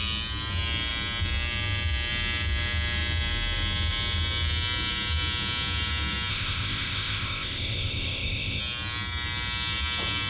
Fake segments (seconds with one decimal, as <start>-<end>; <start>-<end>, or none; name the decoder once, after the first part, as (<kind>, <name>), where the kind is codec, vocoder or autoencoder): 6.3-8.6 (codec, ZipCodec)